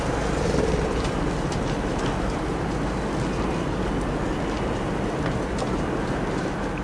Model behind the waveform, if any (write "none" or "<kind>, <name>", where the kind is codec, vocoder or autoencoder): none